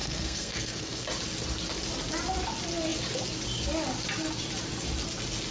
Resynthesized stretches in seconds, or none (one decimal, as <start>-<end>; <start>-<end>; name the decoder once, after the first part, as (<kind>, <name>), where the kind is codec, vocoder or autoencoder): 0.0-1.0 (codec, SNAC)